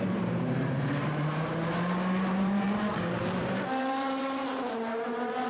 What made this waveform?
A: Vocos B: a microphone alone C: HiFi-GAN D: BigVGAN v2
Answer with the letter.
D